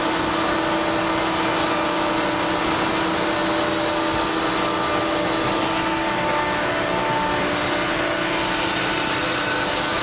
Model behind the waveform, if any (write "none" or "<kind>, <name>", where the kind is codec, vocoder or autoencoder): none